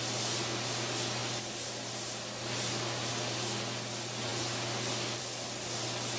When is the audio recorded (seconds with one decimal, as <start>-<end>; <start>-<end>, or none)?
0.0-6.2